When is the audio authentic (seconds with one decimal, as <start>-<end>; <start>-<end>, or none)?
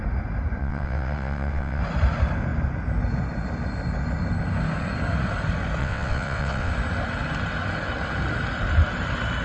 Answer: 0.0-0.6; 1.8-5.8; 6.7-9.4